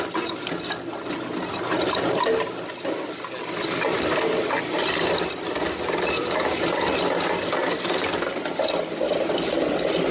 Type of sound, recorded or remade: recorded